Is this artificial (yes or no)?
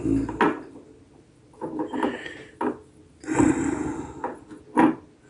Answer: no